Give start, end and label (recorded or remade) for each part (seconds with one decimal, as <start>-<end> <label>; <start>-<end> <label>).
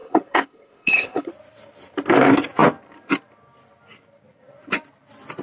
0.0-1.3 remade; 1.3-5.4 recorded